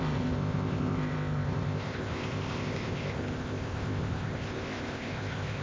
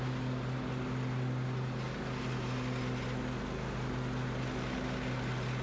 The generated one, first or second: first